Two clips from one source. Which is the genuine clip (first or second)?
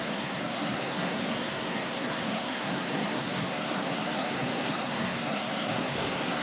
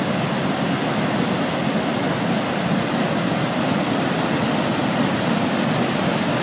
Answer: second